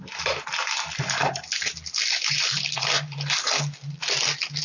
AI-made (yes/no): no